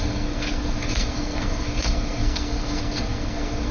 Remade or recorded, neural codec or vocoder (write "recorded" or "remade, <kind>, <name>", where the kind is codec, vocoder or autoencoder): remade, codec, SNAC